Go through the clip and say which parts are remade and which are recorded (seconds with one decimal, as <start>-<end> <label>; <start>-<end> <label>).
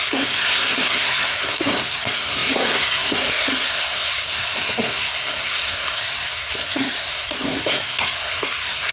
0.0-8.9 remade